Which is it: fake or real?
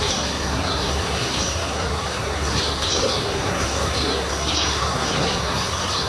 fake